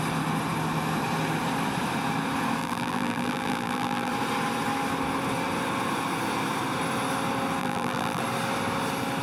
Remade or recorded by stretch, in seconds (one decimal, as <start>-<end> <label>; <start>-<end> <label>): 0.0-2.6 recorded; 2.6-4.1 remade; 4.1-7.6 recorded; 7.6-8.2 remade; 8.2-9.2 recorded